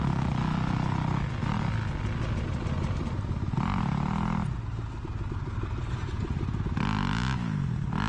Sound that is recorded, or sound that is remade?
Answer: recorded